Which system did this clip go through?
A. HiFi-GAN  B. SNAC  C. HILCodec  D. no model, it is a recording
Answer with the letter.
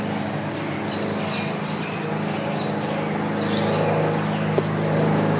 D